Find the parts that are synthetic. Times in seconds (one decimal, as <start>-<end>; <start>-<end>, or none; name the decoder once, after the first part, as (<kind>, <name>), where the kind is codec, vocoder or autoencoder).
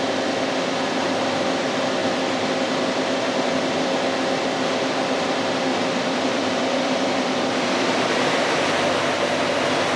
5.7-9.0 (vocoder, BigVGAN v2)